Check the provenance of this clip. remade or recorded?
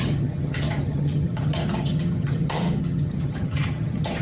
remade